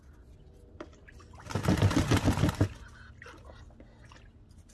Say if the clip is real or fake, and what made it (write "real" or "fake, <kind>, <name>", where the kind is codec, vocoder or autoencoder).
real